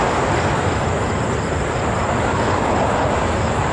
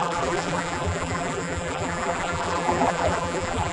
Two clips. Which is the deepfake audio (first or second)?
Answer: second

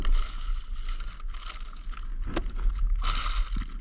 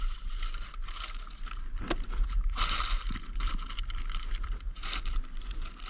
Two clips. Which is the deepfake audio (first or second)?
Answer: second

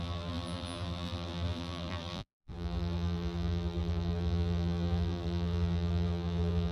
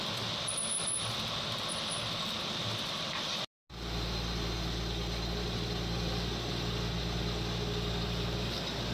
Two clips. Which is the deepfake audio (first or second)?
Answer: first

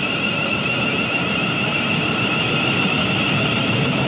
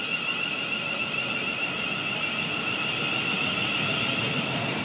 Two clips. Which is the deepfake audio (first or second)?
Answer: first